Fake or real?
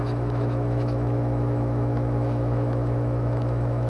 fake